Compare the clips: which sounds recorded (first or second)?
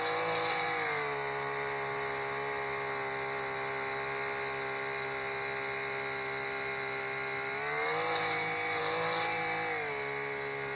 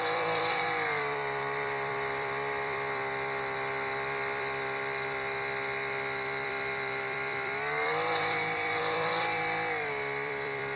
first